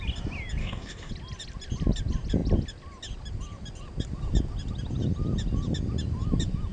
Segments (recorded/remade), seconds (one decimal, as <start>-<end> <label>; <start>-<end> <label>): 0.0-0.6 recorded; 0.6-1.1 remade; 1.1-6.7 recorded